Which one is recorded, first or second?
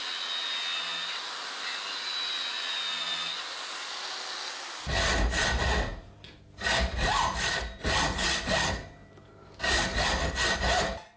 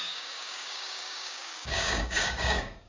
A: first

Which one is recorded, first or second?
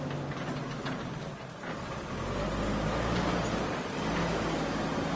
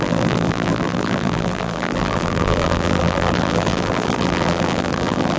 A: first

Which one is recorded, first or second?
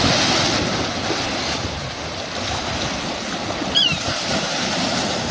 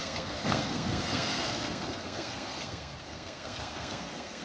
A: first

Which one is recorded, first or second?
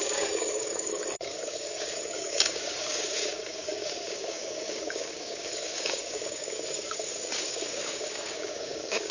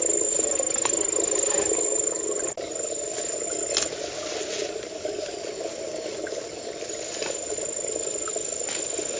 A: second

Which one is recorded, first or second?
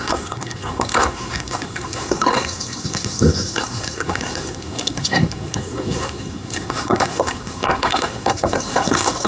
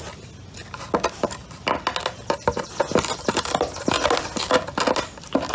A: second